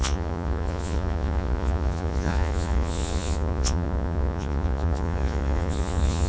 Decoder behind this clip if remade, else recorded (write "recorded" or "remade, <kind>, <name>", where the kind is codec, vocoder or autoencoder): remade, vocoder, Vocos